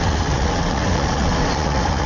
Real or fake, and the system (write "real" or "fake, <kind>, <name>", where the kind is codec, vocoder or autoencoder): fake, vocoder, WaveNeXt